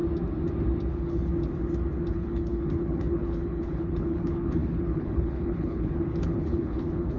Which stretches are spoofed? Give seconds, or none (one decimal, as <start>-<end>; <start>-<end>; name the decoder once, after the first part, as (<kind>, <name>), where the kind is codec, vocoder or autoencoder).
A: 0.9-1.3 (codec, HILCodec); 2.1-7.2